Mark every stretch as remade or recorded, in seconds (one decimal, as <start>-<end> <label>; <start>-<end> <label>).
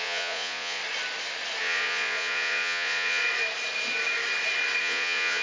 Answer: 0.0-0.8 remade; 0.8-1.6 recorded; 1.6-3.2 remade; 3.2-4.8 recorded; 4.8-5.4 remade